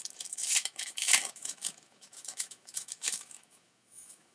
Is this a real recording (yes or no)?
no